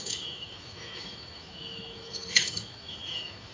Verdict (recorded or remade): remade